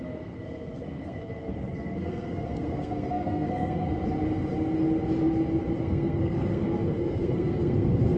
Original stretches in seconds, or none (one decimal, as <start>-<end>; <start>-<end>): 3.9-5.8